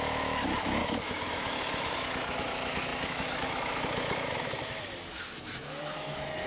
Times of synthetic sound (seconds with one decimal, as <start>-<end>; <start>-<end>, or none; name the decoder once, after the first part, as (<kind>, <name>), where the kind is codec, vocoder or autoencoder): 0.0-6.5 (autoencoder, DAC-VAE)